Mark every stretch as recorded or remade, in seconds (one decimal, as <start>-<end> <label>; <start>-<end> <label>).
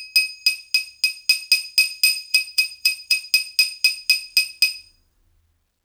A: 0.0-2.3 recorded; 2.3-3.3 remade; 3.3-5.8 recorded